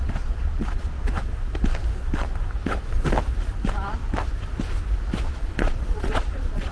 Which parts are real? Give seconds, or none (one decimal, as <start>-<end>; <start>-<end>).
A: 1.3-5.3